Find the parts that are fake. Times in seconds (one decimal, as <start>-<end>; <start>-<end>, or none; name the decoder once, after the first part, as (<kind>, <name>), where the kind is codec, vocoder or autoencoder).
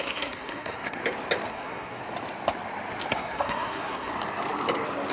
0.0-1.0 (codec, SNAC); 1.5-2.0; 3.1-4.1